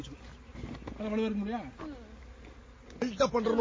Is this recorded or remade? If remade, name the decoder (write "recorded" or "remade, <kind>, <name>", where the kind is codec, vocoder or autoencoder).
recorded